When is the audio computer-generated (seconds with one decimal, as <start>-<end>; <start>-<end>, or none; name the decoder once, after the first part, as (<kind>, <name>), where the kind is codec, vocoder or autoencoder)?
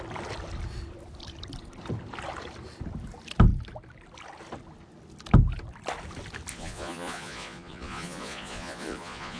6.5-9.4 (vocoder, Vocos)